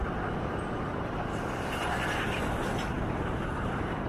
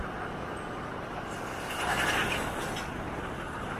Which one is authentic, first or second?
second